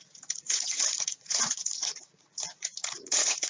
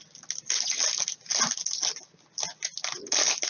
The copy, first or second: first